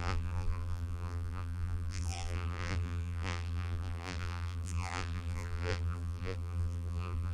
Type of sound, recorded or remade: remade